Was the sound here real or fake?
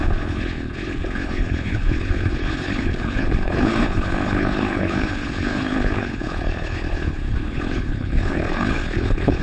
fake